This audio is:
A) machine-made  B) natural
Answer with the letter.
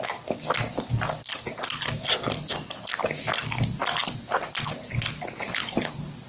B